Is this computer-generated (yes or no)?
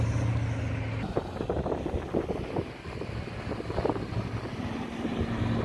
no